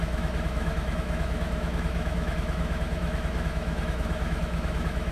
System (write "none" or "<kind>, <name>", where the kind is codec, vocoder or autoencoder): autoencoder, DAC-VAE